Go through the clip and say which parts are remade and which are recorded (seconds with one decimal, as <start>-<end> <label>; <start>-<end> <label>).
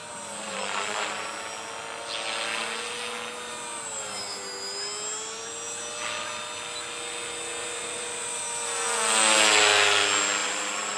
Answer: 0.0-0.6 remade; 0.6-7.6 recorded; 7.6-8.4 remade; 8.4-10.4 recorded; 10.4-11.0 remade